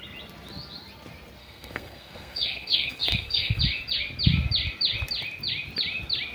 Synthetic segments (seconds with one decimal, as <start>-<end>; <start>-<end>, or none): 1.4-3.6